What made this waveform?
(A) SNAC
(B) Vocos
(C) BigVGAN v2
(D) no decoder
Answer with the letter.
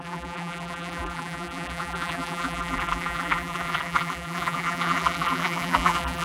C